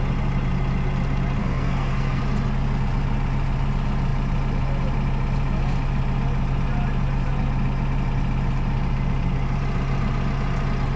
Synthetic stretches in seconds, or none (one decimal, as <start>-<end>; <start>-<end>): 1.4-2.2